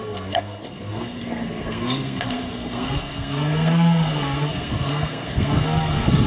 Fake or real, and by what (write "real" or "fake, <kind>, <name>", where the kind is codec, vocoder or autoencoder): fake, codec, SNAC